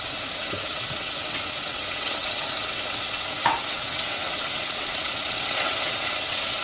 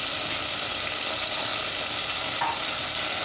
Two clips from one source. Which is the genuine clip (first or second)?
second